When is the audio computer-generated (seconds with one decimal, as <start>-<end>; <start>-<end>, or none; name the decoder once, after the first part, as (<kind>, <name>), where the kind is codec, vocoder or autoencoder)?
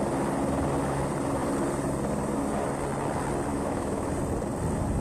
3.5-4.1 (autoencoder, DAC-VAE)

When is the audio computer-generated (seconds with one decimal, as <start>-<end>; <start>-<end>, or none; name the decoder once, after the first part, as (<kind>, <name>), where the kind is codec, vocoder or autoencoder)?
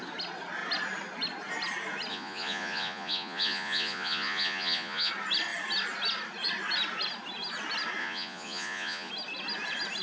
2.1-5.1 (vocoder, Vocos); 8.0-9.1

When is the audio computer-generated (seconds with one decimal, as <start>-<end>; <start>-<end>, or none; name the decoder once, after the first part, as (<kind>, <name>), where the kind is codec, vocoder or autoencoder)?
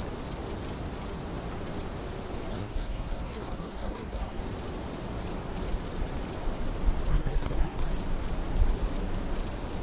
2.5-4.4 (codec, SNAC); 7.1-7.9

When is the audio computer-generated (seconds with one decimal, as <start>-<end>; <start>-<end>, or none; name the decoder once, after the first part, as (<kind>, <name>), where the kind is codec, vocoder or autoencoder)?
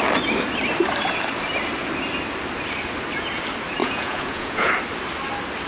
3.8-4.7 (vocoder, Vocos)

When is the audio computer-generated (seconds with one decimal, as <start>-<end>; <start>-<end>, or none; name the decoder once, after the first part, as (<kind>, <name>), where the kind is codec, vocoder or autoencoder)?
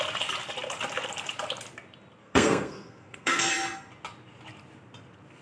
2.2-3.5 (codec, SNAC)